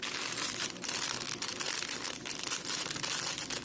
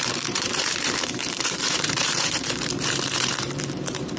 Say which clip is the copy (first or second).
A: second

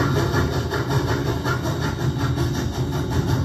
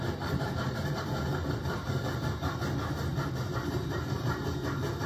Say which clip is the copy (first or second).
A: second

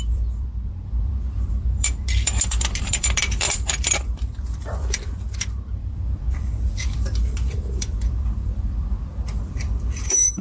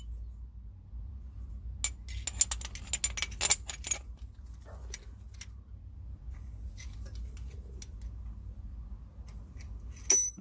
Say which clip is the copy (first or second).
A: first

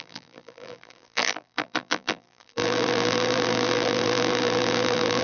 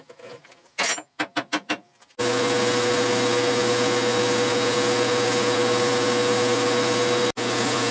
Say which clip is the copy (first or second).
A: first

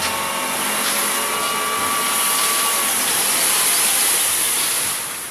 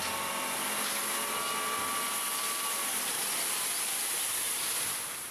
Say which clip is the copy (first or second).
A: second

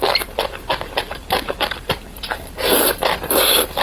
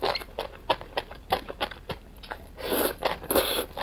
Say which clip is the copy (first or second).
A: first